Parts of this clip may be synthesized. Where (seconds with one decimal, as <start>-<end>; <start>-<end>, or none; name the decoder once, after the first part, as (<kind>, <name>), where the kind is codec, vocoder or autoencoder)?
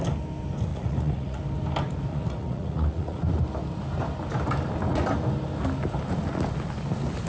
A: 0.7-1.4 (vocoder, Vocos); 2.1-3.2